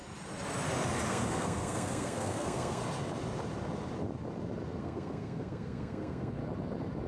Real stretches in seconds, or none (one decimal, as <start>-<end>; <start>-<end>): 0.0-1.1; 2.8-4.8; 6.4-7.1